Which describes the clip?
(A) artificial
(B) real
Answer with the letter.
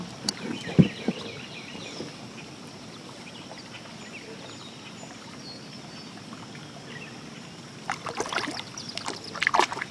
B